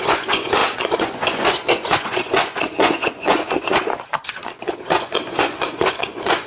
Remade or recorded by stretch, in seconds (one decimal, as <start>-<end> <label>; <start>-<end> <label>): 0.0-6.5 remade